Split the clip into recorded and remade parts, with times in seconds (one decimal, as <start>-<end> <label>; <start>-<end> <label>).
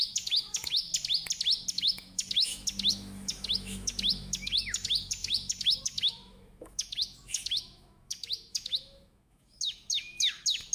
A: 0.0-0.9 remade; 0.9-1.7 recorded; 1.7-10.7 remade